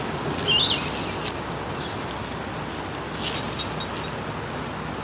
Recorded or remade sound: recorded